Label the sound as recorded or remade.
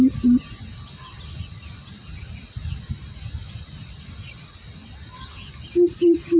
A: recorded